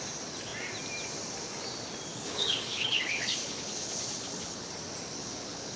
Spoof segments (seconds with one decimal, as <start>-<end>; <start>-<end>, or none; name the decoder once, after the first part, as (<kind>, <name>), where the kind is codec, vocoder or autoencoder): 2.1-4.7 (codec, HILCodec); 5.2-5.8